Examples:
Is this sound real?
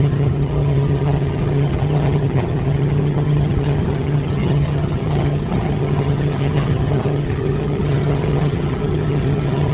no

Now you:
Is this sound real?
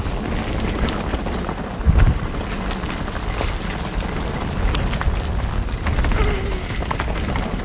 yes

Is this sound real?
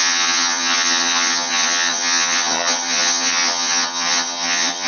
no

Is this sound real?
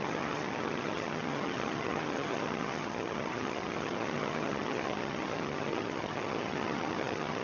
no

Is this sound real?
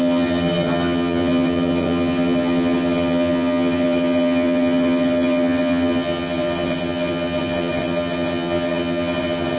no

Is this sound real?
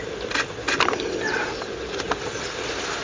yes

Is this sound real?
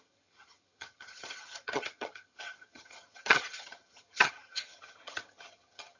no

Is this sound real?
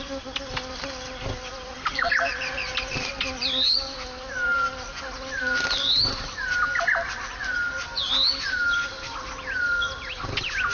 yes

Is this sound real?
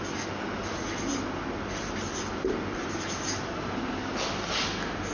yes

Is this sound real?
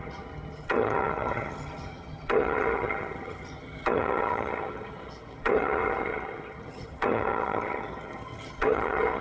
no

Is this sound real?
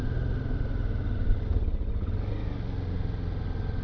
yes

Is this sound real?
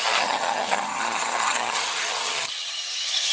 no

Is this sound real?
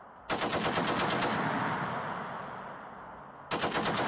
yes